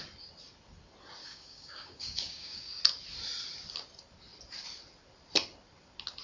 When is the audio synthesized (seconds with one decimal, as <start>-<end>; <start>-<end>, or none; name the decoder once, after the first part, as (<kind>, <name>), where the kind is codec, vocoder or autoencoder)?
1.2-2.8 (codec, DAC)